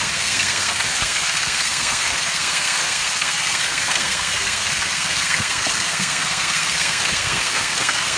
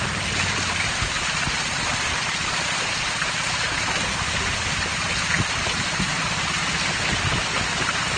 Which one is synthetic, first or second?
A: first